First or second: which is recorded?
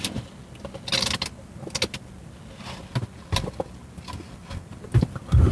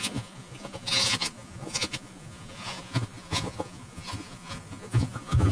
first